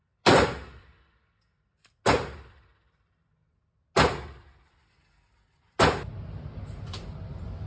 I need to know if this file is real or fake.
real